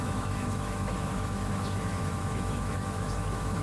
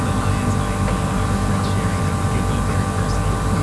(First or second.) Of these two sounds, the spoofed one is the first